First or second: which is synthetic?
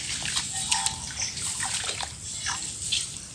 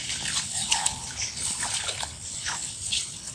second